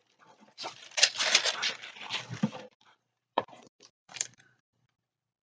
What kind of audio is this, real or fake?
fake